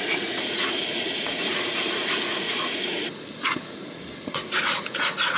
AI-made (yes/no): yes